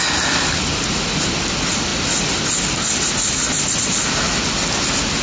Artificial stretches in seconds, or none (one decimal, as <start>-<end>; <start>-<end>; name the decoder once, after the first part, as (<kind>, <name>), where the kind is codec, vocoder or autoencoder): none